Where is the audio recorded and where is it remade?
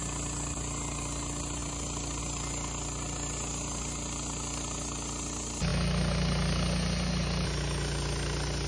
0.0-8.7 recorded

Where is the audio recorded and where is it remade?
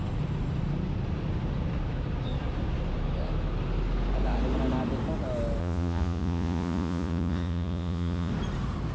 0.0-5.6 recorded; 5.6-8.3 remade; 8.3-8.9 recorded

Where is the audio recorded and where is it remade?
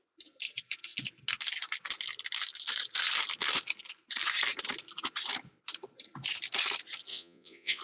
0.0-7.1 recorded; 7.1-7.8 remade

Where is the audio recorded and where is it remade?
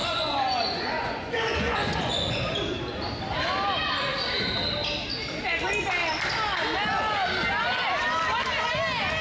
0.0-2.4 remade; 2.4-9.2 recorded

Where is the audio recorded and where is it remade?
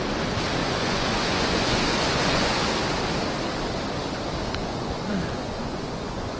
0.0-0.6 recorded; 0.6-2.7 remade; 2.7-4.6 recorded; 4.6-6.4 remade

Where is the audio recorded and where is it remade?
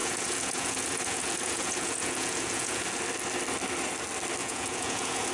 0.0-2.8 remade; 2.8-4.4 recorded; 4.4-5.3 remade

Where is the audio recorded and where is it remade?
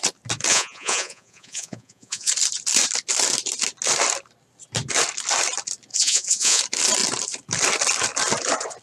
0.0-0.5 recorded; 0.5-2.3 remade; 2.3-5.9 recorded; 5.9-6.6 remade; 6.6-8.8 recorded